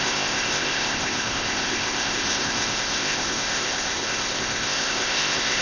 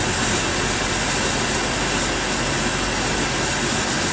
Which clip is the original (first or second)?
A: second